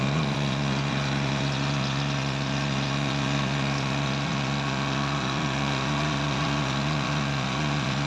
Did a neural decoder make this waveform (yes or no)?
yes